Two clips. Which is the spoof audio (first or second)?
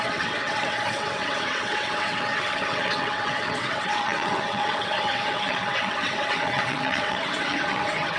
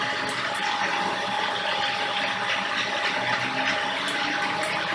first